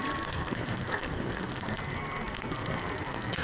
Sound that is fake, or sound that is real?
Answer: fake